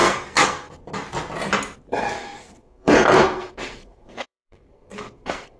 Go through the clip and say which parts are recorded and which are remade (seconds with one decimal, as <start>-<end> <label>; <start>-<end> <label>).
0.0-0.7 remade; 0.7-2.0 recorded; 2.0-5.6 remade